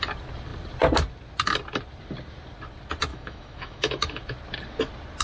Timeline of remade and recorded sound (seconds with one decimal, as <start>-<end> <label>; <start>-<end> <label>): 0.0-3.1 recorded; 3.1-4.2 remade; 4.2-5.2 recorded